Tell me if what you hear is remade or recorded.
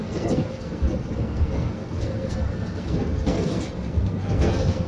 remade